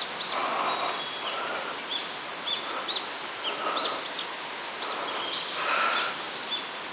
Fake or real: real